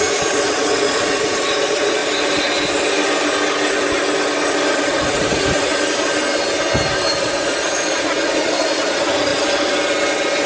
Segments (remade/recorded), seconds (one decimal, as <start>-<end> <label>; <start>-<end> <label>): 0.0-2.0 remade; 2.0-4.7 recorded; 4.7-5.7 remade; 5.7-7.2 recorded; 7.2-9.3 remade; 9.3-10.5 recorded